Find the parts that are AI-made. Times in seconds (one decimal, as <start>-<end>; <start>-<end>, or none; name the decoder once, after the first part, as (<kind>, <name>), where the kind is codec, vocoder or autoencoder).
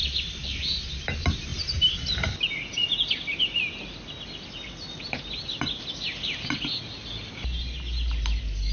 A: none